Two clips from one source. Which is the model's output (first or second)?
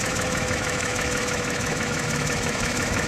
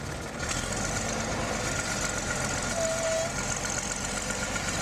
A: first